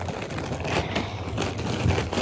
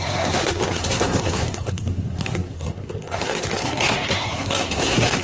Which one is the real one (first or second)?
first